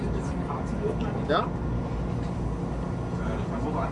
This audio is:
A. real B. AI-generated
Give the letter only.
A